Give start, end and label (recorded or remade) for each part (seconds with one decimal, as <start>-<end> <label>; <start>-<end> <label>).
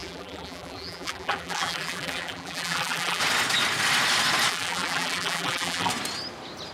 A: 0.0-3.2 remade; 3.2-4.5 recorded; 4.5-5.9 remade; 5.9-6.7 recorded